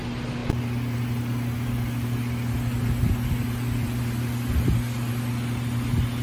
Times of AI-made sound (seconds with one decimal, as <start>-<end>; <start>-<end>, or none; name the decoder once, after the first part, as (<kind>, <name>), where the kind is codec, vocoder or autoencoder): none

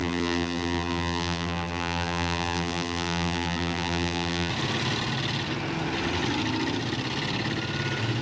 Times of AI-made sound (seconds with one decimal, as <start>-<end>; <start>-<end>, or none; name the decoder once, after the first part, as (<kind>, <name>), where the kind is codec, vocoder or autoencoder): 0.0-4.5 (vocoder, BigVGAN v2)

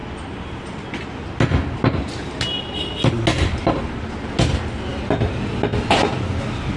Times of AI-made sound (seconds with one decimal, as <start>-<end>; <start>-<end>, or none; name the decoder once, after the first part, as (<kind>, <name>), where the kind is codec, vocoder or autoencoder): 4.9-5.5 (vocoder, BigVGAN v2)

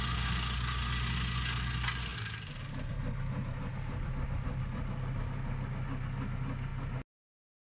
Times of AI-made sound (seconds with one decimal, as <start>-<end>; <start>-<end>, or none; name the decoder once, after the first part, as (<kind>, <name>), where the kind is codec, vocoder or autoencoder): 2.1-4.1 (vocoder, BigVGAN v2)

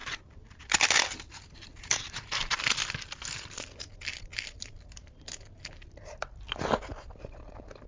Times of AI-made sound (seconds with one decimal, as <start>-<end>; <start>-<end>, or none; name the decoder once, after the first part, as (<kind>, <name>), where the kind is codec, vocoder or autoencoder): 0.0-0.7 (vocoder, BigVGAN v2); 1.7-2.4